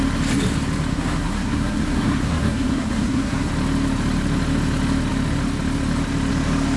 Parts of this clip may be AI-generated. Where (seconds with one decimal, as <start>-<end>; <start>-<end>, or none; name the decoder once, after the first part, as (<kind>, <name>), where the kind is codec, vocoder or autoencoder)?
0.9-3.5 (codec, SNAC)

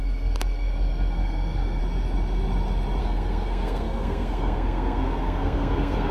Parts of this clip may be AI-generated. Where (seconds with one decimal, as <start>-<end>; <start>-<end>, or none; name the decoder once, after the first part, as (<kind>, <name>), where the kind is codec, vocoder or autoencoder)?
0.0-1.8 (codec, SNAC); 3.0-6.1

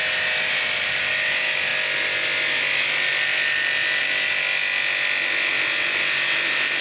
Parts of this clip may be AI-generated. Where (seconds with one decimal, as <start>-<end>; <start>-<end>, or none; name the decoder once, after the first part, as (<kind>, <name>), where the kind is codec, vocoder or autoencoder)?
none

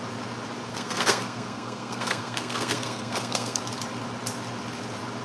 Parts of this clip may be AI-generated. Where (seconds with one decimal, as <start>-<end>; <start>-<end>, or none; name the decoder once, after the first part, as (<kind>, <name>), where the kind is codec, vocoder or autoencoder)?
0.7-3.6 (codec, SNAC)

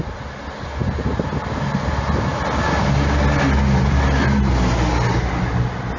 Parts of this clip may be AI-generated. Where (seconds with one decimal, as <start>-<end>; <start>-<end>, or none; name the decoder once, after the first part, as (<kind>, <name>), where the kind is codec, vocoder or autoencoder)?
none

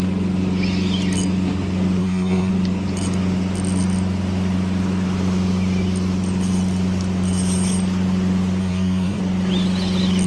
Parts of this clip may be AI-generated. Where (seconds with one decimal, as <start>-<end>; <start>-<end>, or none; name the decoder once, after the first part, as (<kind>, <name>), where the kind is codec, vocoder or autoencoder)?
2.0-2.5 (codec, SNAC); 8.6-9.2